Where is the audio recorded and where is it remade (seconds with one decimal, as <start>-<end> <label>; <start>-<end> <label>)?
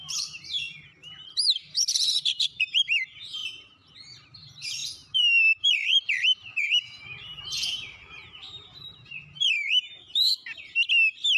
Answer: 0.0-10.3 remade; 10.3-11.4 recorded